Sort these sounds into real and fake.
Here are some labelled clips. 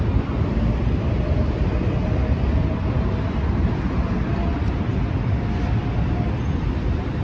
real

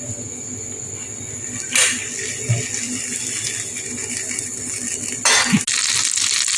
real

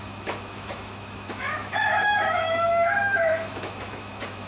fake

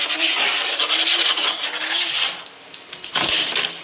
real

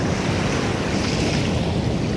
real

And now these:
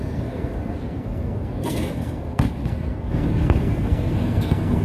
fake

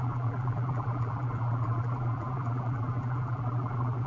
fake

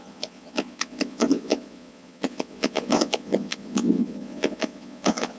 fake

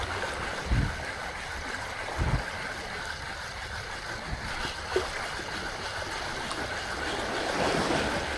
real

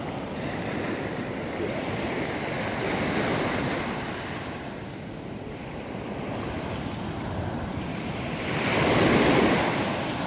real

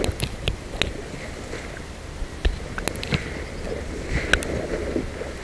real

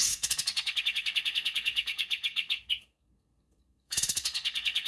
fake